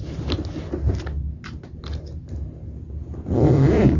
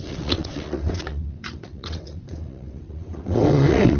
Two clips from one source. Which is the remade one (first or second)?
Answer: second